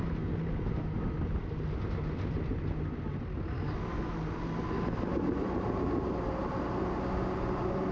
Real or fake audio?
real